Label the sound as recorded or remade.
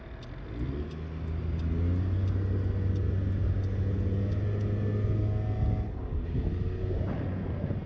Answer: recorded